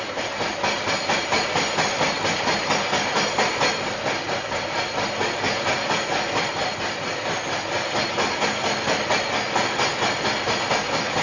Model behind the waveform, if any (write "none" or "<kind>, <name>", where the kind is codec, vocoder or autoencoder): none